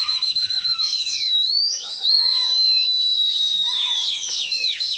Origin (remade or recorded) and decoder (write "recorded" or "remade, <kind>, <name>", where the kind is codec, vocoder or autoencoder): remade, autoencoder, DAC-VAE